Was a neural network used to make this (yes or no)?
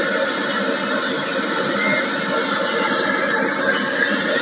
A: no